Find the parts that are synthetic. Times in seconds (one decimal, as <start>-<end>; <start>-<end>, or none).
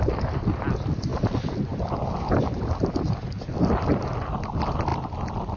none